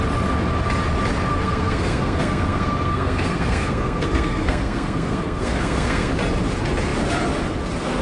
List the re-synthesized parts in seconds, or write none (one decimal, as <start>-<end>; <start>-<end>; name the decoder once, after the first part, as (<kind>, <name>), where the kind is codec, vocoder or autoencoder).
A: 1.3-6.1 (codec, SNAC)